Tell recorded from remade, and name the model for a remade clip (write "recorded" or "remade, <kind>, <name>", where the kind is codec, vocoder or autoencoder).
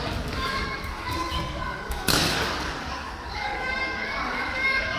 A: remade, codec, DAC